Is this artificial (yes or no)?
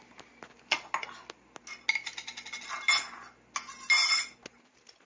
no